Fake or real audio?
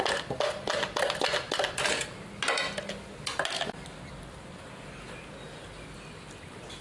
real